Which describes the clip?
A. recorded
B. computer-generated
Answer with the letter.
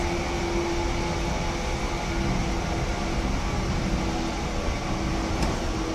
A